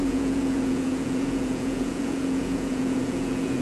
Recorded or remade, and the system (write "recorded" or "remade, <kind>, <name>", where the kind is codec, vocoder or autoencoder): remade, vocoder, Vocos